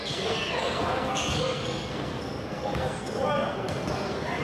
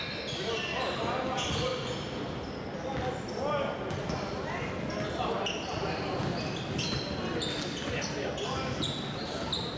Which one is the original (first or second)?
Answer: second